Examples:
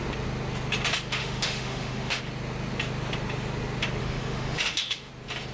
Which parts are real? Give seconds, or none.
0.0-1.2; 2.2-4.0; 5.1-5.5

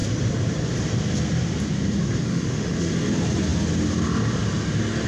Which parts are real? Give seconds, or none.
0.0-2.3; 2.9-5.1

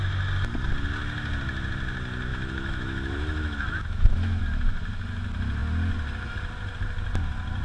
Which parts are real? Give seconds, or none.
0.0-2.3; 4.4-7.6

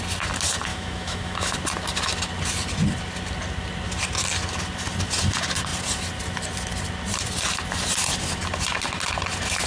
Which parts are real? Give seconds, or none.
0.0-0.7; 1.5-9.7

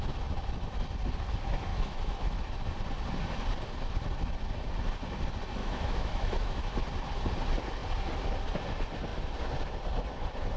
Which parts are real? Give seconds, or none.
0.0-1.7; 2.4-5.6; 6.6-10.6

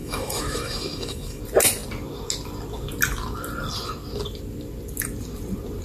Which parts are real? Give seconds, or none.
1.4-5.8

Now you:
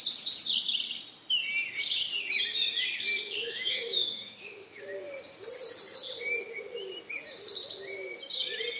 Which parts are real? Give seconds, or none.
0.0-3.4; 4.8-8.8

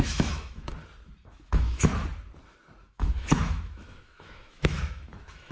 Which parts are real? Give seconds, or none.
0.7-1.2; 1.9-2.8